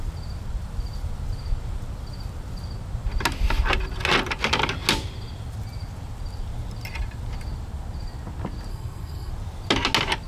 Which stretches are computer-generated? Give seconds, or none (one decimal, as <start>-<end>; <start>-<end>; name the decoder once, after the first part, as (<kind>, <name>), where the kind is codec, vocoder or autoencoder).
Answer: 8.7-9.3 (codec, SNAC)